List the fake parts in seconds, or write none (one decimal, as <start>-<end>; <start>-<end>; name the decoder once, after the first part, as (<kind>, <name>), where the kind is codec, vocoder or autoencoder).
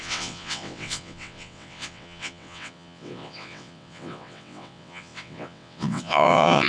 0.0-6.7 (vocoder, WaveNeXt)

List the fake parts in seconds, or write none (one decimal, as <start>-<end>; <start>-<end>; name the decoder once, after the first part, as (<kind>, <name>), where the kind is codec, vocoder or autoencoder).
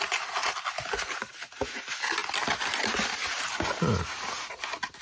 none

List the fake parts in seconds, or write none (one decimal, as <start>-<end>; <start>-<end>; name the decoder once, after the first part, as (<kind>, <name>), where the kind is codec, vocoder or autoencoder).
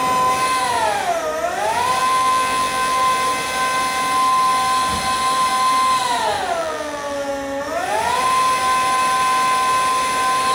2.0-3.0 (vocoder, BigVGAN v2); 6.6-7.3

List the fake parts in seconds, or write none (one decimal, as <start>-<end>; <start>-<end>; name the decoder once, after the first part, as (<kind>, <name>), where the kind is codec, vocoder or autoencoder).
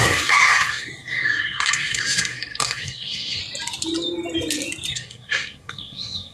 0.0-3.4 (codec, SNAC); 4.9-6.3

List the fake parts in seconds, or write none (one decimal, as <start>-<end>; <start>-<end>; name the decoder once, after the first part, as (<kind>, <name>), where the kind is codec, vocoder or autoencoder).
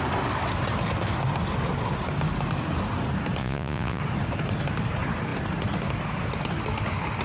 3.4-4.0 (vocoder, Vocos)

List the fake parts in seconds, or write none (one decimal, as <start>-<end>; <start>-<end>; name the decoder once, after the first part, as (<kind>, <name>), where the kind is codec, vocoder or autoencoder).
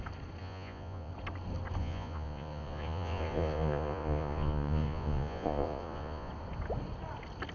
0.4-1.1 (vocoder, Vocos); 1.8-6.3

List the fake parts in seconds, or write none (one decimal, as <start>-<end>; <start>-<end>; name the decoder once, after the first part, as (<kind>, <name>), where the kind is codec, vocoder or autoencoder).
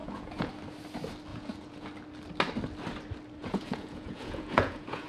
0.0-0.5 (vocoder, Vocos); 1.3-1.9; 3.4-5.1